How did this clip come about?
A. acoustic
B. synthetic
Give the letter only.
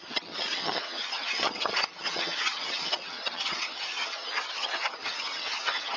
B